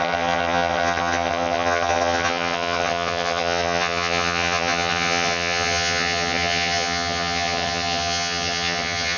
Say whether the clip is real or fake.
fake